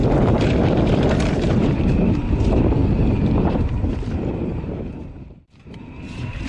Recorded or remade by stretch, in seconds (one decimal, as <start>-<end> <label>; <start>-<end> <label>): 0.0-2.8 remade; 2.8-3.5 recorded; 3.5-6.5 remade